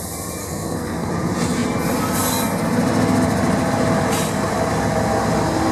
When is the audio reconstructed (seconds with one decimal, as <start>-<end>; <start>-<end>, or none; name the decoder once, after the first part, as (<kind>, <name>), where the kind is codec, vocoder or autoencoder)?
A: 0.4-1.1 (codec, SNAC)